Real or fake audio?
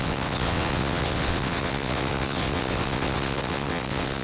fake